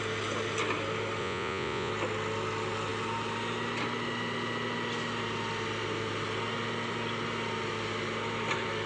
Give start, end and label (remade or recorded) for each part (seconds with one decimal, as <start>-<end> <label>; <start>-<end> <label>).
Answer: 0.0-1.2 recorded; 1.2-1.9 remade; 1.9-8.9 recorded